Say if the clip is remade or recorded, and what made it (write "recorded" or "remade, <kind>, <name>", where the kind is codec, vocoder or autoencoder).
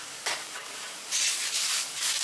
remade, codec, DAC